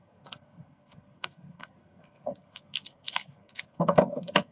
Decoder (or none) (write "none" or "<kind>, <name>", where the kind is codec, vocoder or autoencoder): codec, SNAC